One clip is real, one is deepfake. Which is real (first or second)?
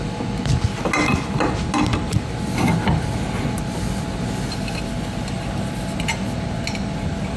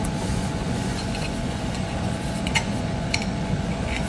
first